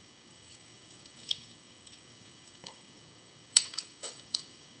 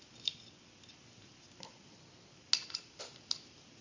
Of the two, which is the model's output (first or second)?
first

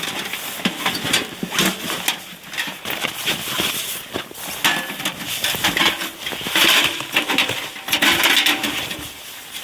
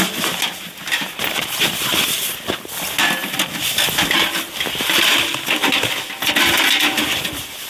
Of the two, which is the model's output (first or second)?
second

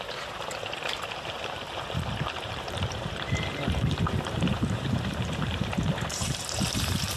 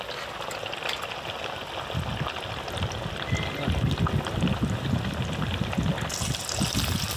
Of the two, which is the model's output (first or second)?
first